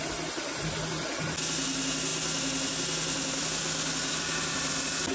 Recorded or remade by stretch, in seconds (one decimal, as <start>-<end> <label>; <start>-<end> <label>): 0.0-5.1 recorded